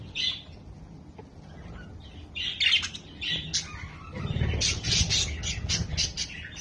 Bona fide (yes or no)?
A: yes